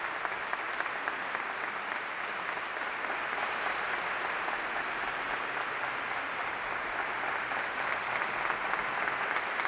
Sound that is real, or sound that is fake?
real